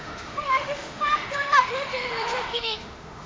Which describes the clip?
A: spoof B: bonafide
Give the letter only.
A